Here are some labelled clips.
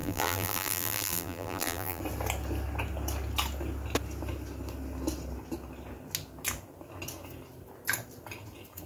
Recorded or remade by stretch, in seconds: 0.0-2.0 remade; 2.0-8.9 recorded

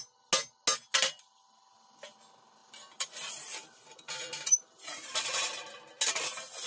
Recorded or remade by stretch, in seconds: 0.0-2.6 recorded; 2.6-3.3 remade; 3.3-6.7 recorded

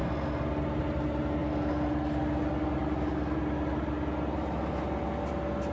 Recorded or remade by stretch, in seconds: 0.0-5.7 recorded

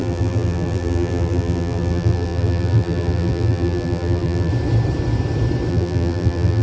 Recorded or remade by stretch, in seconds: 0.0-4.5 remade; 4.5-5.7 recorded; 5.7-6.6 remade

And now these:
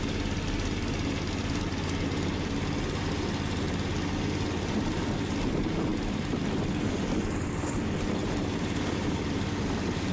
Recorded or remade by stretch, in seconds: 0.0-8.2 recorded; 8.2-9.2 remade; 9.2-10.1 recorded